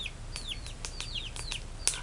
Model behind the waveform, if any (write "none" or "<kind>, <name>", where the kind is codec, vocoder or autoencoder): none